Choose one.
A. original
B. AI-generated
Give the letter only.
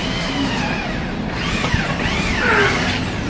A